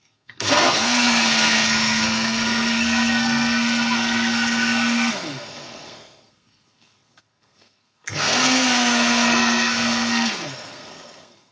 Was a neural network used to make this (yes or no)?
yes